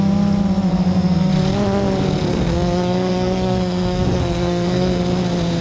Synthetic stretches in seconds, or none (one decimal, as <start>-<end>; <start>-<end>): 0.7-1.3; 2.3-5.0

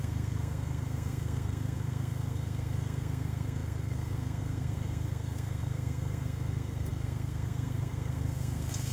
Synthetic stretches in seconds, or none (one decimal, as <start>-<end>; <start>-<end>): 0.0-8.9

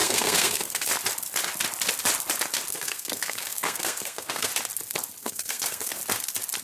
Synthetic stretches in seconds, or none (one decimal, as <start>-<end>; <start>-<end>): 0.0-0.9; 2.7-4.5; 5.2-6.0

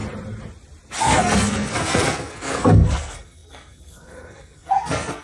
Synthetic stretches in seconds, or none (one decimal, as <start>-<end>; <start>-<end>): 1.0-5.2

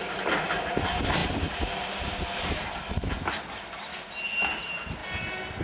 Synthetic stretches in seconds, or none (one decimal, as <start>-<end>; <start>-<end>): none

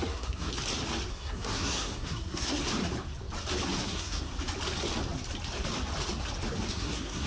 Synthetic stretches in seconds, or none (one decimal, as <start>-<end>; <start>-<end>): 0.0-0.5; 1.1-2.6; 3.8-4.3; 6.7-7.3

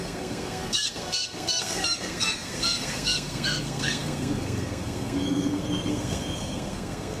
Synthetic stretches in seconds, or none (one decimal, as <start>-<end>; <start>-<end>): 0.0-7.2

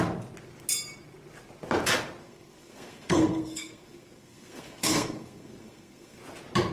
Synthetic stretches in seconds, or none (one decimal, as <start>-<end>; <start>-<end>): 2.2-6.2